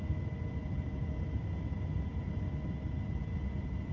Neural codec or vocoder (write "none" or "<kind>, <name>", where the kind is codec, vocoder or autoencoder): none